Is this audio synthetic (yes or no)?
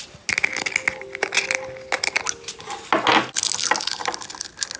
no